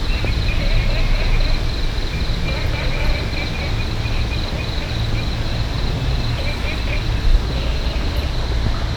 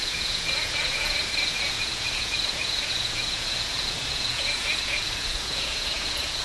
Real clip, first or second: first